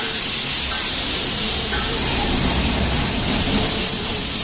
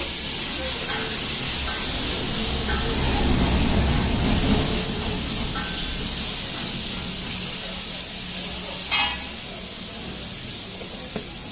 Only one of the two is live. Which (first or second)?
second